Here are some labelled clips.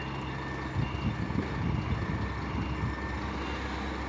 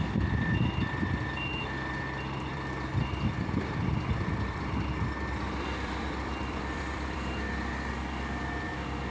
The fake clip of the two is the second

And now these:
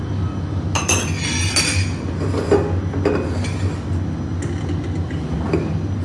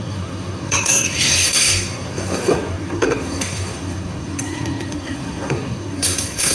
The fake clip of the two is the second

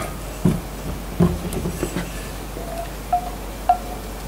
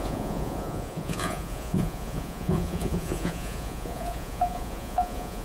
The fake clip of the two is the second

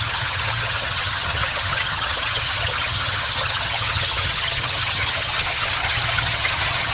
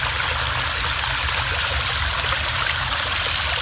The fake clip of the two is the first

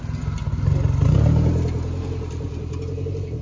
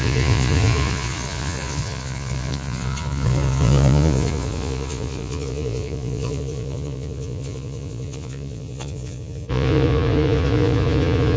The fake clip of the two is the second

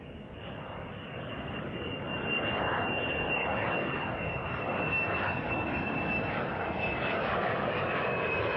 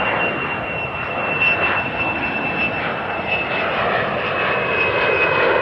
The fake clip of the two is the first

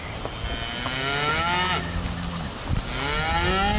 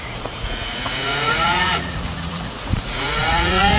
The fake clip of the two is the second